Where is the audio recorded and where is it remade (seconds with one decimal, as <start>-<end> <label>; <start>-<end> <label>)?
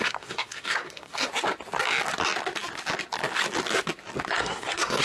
0.0-1.3 remade; 1.3-4.3 recorded; 4.3-5.0 remade